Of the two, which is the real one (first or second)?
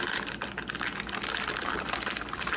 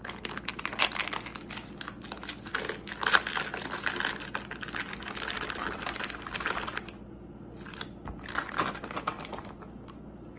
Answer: second